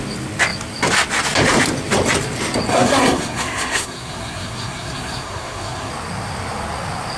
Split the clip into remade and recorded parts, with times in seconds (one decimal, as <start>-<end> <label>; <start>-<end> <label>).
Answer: 0.0-2.7 recorded; 2.7-5.9 remade; 5.9-7.2 recorded